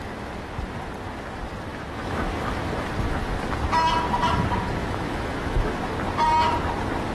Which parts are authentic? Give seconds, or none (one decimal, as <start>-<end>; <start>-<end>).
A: 0.0-1.7; 2.9-4.8; 5.8-7.1